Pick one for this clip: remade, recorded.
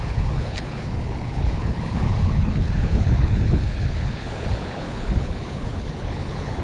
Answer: remade